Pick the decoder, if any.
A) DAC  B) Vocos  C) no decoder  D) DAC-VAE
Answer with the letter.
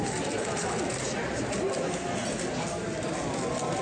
C